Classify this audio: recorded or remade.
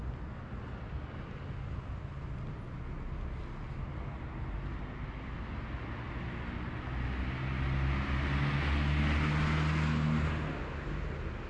recorded